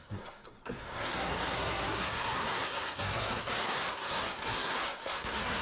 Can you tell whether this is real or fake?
fake